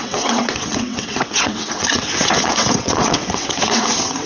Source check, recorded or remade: remade